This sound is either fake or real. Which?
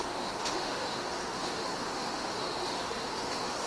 fake